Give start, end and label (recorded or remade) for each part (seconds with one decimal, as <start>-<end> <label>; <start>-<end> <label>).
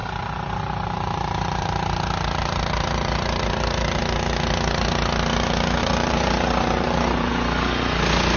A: 0.0-4.0 remade; 4.0-5.8 recorded; 5.8-7.3 remade; 7.3-8.4 recorded